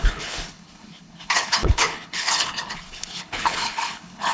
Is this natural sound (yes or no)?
no